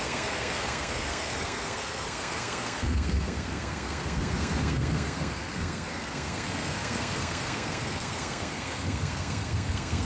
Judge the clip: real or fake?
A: fake